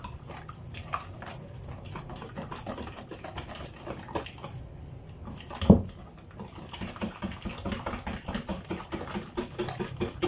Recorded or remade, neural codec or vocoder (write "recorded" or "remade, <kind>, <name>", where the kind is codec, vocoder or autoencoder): recorded